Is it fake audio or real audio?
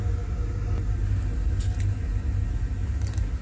real